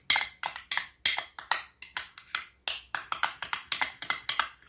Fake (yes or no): no